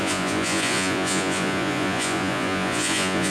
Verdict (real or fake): fake